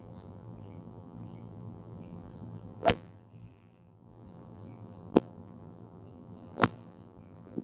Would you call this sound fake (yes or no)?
yes